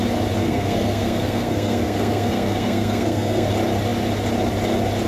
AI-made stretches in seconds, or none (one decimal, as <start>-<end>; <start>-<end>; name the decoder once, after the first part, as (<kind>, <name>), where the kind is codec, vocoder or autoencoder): 0.4-3.5 (codec, SNAC)